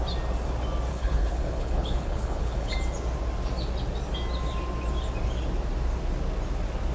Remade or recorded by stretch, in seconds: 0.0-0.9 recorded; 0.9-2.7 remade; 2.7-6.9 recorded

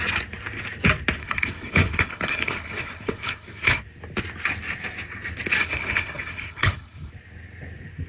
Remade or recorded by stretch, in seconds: 0.0-1.2 recorded; 1.2-3.8 remade; 3.8-5.6 recorded; 5.6-7.1 remade; 7.1-8.1 recorded